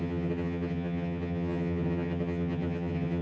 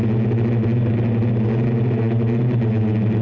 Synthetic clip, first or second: first